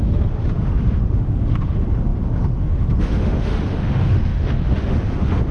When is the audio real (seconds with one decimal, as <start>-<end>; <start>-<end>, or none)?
none